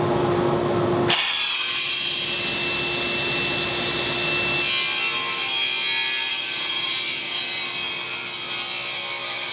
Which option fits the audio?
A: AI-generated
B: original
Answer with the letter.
B